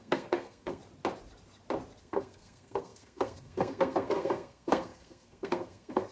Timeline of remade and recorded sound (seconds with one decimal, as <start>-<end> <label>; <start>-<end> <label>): 0.0-0.8 remade; 0.8-2.0 recorded; 2.0-6.1 remade